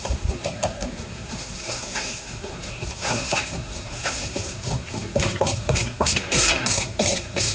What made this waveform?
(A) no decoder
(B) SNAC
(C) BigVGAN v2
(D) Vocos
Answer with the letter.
B